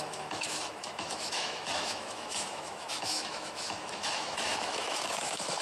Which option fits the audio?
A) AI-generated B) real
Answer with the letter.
A